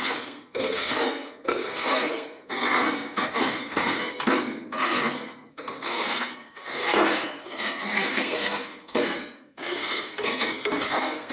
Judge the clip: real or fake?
fake